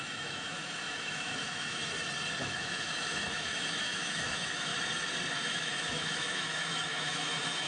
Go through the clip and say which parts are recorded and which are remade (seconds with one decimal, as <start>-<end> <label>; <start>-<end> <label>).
0.0-1.8 remade; 1.8-2.4 recorded; 2.4-4.7 remade; 4.7-5.3 recorded; 5.3-7.7 remade